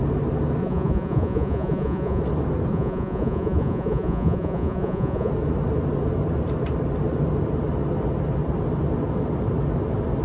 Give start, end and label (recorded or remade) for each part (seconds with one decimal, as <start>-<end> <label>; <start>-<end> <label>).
0.0-0.6 recorded; 0.6-2.2 remade; 2.2-2.7 recorded; 2.7-5.3 remade; 5.3-10.2 recorded